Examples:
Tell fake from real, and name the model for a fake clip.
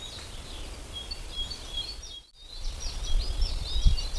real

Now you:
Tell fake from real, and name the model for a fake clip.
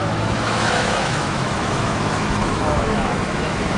fake, autoencoder, DAC-VAE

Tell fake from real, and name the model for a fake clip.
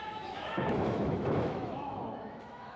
fake, autoencoder, DAC-VAE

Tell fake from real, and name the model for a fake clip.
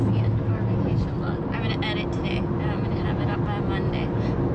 real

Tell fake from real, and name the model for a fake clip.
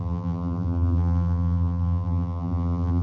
fake, vocoder, BigVGAN v2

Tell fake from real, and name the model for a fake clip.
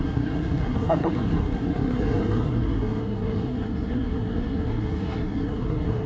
fake, codec, SNAC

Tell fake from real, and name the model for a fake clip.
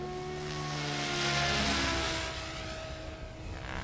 real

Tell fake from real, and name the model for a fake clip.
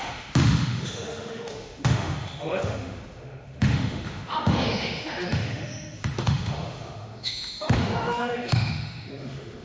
fake, autoencoder, DAC-VAE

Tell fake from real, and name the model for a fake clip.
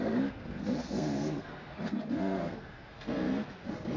fake, codec, SNAC